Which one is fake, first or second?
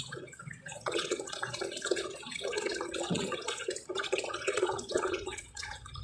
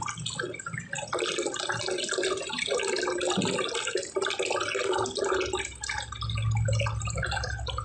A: first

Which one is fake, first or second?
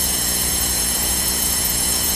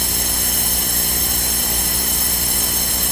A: first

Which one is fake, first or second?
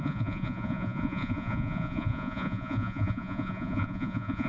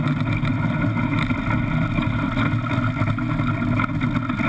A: first